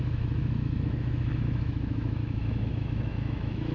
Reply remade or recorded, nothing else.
remade